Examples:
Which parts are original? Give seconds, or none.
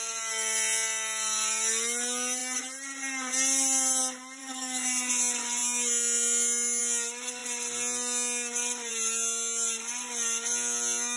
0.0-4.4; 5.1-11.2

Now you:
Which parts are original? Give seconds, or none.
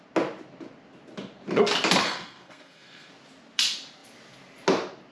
0.0-2.0; 3.1-5.1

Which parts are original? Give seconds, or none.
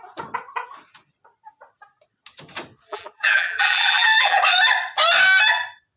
0.0-2.9; 4.4-6.0